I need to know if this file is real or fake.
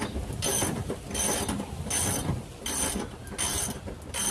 real